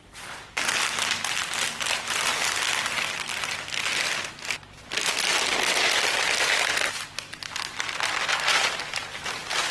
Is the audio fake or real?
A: real